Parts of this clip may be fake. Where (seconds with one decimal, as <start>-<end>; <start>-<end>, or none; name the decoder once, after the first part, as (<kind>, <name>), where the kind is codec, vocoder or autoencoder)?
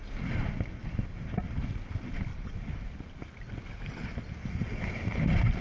0.8-1.7 (vocoder, BigVGAN v2); 2.3-4.0; 4.4-5.6